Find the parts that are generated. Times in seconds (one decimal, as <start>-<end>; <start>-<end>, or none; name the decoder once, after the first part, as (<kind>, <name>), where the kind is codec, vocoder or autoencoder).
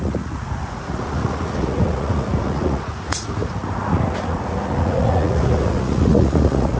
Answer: 0.0-6.8 (vocoder, Vocos)